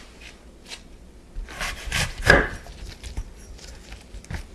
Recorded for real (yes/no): yes